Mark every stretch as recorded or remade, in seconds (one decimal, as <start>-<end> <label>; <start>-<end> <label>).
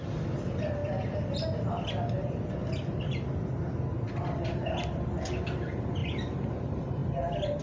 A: 0.0-6.0 recorded; 6.0-6.6 remade; 6.6-7.6 recorded